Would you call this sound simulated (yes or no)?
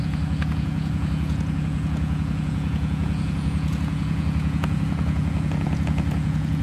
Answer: yes